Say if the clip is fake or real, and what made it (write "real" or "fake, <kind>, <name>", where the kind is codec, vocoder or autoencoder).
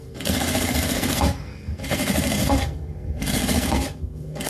fake, codec, SNAC